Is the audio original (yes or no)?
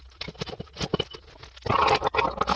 yes